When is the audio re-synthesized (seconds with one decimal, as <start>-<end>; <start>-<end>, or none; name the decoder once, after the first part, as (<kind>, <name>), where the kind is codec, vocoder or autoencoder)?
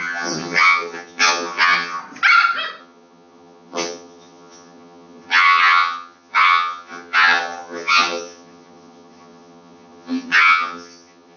0.0-2.0 (vocoder, HiFi-GAN); 2.8-11.4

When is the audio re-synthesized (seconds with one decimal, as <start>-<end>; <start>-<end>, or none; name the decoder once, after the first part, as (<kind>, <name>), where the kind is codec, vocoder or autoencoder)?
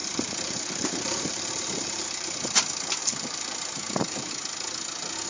0.0-2.6 (vocoder, BigVGAN v2); 3.0-4.3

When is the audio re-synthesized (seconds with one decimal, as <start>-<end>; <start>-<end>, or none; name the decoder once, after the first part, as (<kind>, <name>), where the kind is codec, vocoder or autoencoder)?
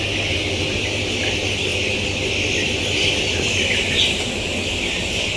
none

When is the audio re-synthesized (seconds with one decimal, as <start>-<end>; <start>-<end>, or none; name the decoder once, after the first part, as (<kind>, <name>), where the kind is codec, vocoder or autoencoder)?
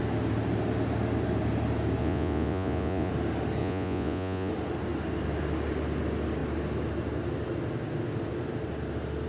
2.0-3.1 (vocoder, Vocos); 3.6-4.5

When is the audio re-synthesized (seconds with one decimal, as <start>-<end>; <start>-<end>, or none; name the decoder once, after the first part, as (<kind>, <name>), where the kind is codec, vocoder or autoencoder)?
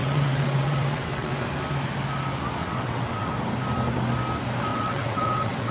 0.0-1.4 (vocoder, WaveNeXt); 2.6-3.3; 4.7-5.7